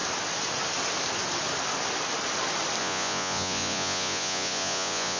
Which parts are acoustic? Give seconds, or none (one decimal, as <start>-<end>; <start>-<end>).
0.0-2.8